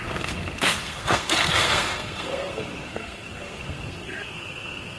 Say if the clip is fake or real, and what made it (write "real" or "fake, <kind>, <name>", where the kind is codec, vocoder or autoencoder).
fake, codec, SNAC